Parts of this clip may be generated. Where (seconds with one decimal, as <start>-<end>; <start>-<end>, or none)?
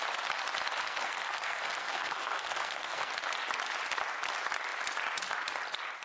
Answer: 0.8-3.1